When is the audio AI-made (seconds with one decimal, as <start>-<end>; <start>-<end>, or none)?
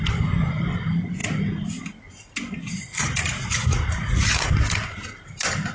2.9-4.5